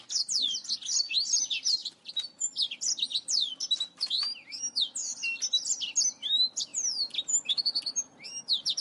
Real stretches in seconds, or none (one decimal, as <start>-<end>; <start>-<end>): 0.0-1.8; 3.5-8.8